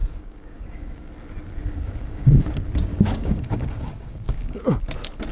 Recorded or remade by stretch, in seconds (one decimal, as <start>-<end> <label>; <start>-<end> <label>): 0.0-1.1 remade; 1.1-1.6 recorded; 1.6-2.4 remade; 2.4-2.9 recorded; 2.9-4.8 remade; 4.8-5.3 recorded